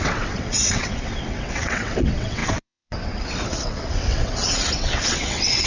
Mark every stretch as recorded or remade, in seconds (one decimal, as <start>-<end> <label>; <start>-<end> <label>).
0.0-5.7 remade